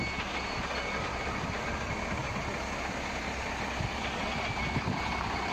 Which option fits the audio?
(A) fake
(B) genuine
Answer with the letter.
B